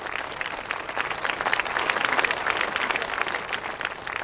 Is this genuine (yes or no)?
yes